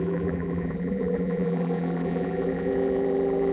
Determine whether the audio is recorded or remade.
remade